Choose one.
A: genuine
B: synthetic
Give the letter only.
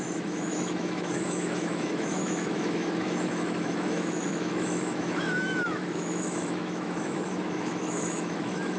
B